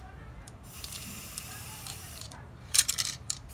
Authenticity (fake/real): fake